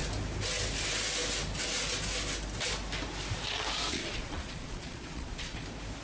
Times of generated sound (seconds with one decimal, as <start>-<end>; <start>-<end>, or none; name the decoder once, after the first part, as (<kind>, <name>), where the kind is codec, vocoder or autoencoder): 3.9-5.6 (vocoder, Vocos)